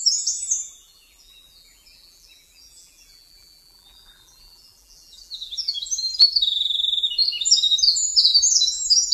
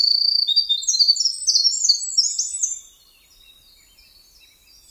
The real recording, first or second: second